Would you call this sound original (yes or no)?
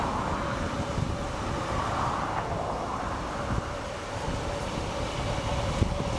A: yes